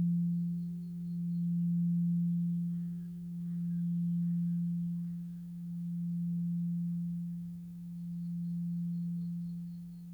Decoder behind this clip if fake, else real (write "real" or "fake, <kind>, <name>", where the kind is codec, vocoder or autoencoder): fake, autoencoder, DAC-VAE